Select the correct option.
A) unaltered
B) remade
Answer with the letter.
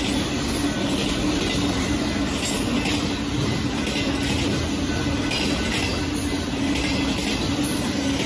A